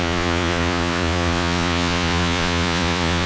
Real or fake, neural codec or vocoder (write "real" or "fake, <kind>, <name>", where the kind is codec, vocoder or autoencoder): fake, vocoder, Vocos